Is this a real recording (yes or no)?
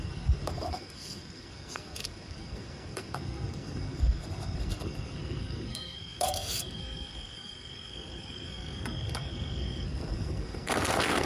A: no